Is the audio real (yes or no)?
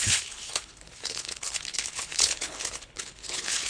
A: no